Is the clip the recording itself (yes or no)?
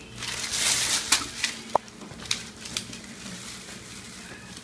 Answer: yes